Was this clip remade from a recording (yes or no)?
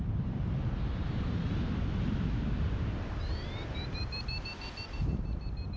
yes